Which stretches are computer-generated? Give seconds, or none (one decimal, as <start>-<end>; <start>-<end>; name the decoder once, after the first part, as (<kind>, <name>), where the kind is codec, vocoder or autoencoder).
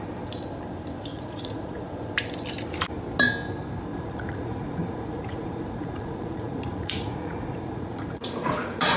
1.1-1.8 (vocoder, Vocos); 3.9-9.0